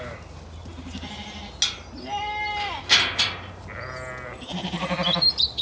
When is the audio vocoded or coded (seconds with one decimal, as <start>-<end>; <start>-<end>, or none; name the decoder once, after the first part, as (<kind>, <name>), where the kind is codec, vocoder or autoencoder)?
none